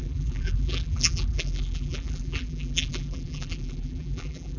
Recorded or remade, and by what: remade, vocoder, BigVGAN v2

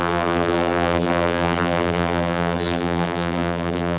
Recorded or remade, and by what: remade, vocoder, BigVGAN v2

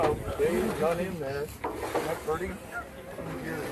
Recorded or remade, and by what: remade, vocoder, BigVGAN v2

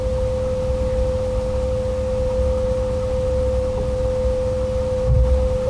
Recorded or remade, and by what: recorded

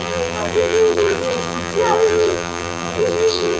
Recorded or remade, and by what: remade, vocoder, BigVGAN v2